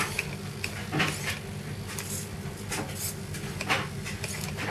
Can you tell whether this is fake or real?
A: real